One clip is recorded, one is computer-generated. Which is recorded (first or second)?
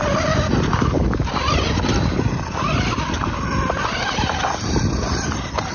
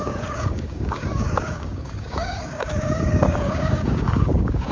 first